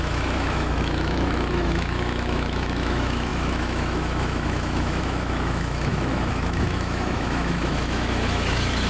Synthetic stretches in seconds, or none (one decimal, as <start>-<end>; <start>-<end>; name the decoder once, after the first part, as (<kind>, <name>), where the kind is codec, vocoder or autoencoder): 0.0-8.9 (autoencoder, DAC-VAE)